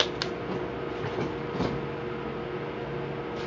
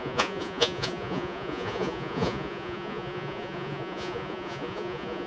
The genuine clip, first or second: first